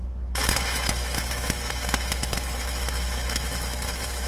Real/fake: fake